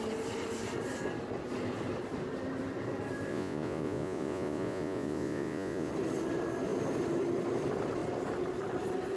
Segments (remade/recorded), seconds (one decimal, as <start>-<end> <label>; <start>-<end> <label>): 0.0-3.3 recorded; 3.3-5.9 remade; 5.9-9.2 recorded